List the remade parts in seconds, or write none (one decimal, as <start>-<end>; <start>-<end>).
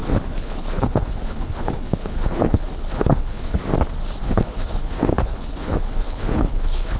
0.0-3.6; 4.2-7.0